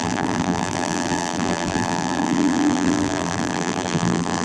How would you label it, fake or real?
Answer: fake